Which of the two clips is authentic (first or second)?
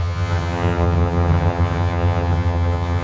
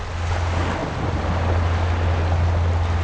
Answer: second